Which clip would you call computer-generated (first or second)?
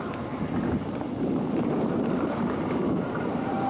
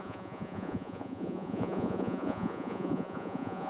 second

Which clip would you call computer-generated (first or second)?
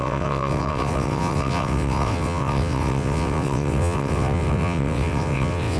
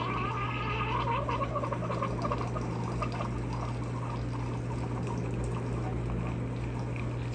first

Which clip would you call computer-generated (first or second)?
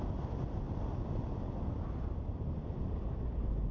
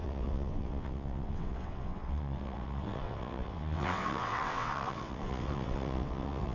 second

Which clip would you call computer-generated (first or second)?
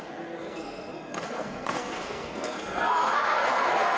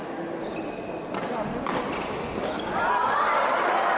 first